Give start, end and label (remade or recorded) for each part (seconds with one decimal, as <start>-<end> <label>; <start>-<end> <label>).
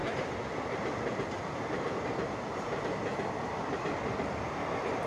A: 0.0-1.9 remade; 1.9-3.1 recorded; 3.1-3.8 remade; 3.8-5.1 recorded